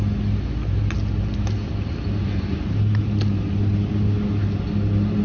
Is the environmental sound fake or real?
real